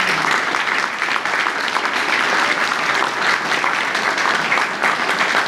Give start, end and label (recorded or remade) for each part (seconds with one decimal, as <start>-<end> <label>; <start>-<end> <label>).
0.0-5.5 recorded